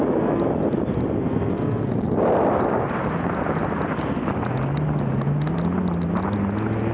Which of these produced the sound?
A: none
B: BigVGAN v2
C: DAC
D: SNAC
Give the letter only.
A